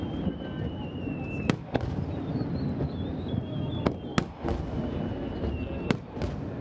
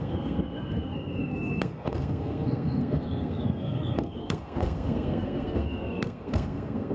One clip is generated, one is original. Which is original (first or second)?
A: first